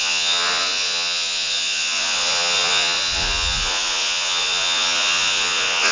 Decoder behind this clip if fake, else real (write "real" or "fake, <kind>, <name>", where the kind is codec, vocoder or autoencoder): fake, vocoder, Vocos